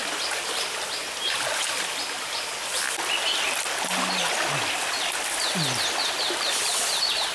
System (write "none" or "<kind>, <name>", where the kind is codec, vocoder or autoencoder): none